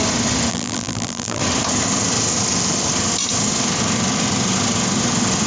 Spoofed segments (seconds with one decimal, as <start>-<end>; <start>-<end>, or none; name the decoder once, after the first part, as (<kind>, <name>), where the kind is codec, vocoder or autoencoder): 0.5-1.4 (vocoder, BigVGAN v2)